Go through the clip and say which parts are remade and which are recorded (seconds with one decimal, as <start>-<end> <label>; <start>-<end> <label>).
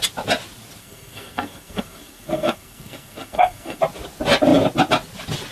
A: 0.0-0.8 recorded; 0.8-3.8 remade; 3.8-5.5 recorded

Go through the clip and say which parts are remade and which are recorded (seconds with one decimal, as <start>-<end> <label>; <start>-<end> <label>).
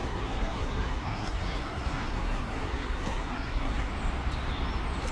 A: 0.0-3.9 remade; 3.9-5.1 recorded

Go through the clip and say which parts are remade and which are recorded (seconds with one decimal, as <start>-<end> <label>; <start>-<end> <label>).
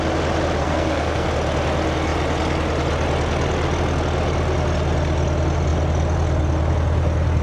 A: 0.0-0.6 recorded; 0.6-1.3 remade; 1.3-7.4 recorded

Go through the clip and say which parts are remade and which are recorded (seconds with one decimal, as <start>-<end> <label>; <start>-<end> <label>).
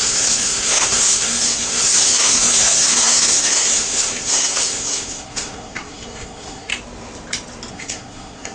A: 0.0-6.7 remade; 6.7-7.7 recorded; 7.7-8.5 remade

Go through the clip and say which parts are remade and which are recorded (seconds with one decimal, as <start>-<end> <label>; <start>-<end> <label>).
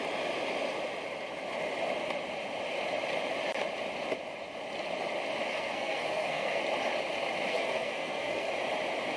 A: 0.0-5.5 recorded; 5.5-6.6 remade; 6.6-7.5 recorded; 7.5-8.5 remade; 8.5-9.2 recorded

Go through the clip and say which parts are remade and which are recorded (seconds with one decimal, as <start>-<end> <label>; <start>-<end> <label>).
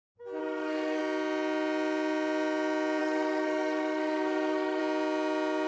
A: 0.0-0.4 recorded; 0.4-1.0 remade; 1.0-3.0 recorded; 3.0-4.8 remade; 4.8-5.7 recorded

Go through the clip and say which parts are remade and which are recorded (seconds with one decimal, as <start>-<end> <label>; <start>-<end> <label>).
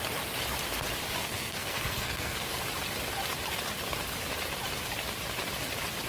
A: 0.0-1.2 recorded; 1.2-2.6 remade; 2.6-6.1 recorded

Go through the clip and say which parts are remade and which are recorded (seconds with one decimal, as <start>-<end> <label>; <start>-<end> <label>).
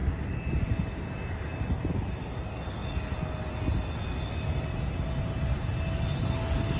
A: 0.0-6.8 recorded